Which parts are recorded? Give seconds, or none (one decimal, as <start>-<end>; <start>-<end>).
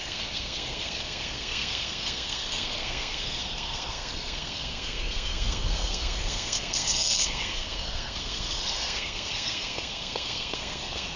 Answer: none